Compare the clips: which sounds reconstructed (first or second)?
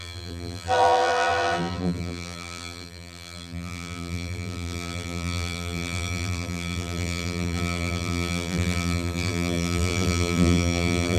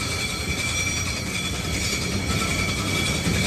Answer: first